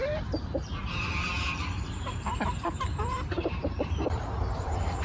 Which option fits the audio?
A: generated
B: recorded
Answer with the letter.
A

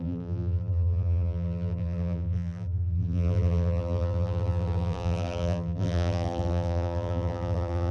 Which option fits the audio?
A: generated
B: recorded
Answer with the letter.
A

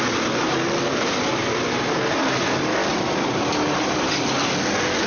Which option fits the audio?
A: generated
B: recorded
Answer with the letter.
B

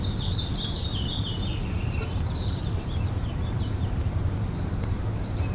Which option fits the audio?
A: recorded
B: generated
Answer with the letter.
B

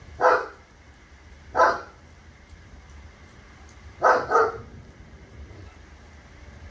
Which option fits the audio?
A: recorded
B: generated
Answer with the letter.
B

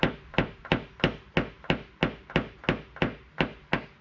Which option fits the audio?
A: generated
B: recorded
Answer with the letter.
B